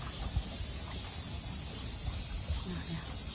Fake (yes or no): no